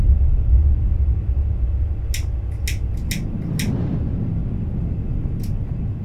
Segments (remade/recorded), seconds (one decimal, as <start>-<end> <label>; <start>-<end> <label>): 0.0-6.0 recorded